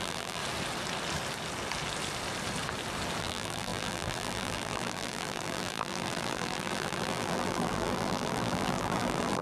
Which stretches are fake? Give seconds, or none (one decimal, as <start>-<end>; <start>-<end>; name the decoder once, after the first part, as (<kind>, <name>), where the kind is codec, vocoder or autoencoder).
0.0-0.4 (vocoder, BigVGAN v2); 3.2-9.4